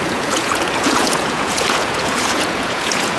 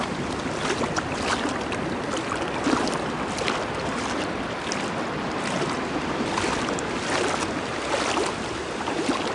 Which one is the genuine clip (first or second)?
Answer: second